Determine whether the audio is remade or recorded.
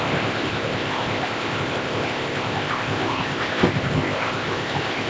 remade